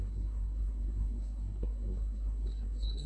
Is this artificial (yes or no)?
yes